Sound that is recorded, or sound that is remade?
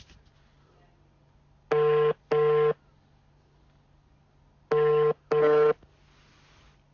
recorded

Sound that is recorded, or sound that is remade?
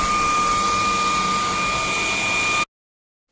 recorded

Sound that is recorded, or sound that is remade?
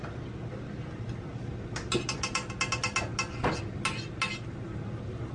recorded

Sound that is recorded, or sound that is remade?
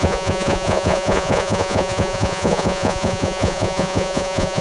remade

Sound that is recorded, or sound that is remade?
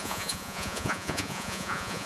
remade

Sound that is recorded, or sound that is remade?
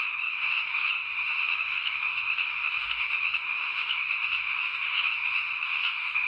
remade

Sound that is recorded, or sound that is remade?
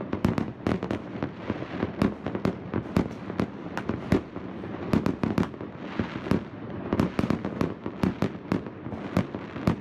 recorded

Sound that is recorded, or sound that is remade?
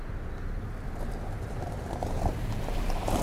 remade